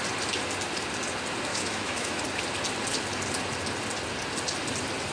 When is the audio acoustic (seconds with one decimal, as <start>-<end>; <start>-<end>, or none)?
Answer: 0.0-1.5; 2.2-5.1